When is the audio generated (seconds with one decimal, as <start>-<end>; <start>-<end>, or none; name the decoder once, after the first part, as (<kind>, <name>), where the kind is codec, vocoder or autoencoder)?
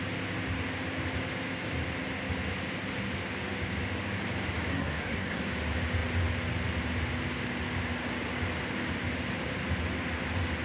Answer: 4.7-5.4 (codec, SNAC)